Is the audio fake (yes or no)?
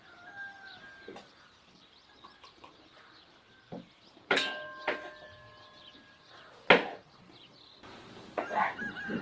no